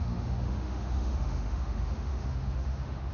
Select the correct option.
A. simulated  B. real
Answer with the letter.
A